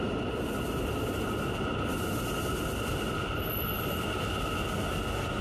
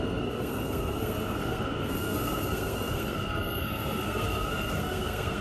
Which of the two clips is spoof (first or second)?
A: second